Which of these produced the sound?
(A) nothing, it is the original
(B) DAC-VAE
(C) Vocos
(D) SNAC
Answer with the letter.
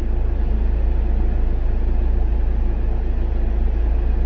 A